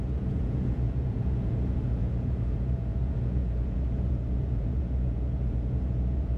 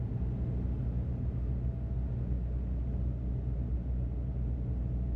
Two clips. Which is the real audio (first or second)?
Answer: second